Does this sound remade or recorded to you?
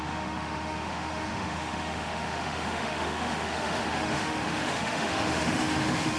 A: remade